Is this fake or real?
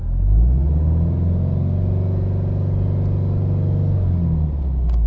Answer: real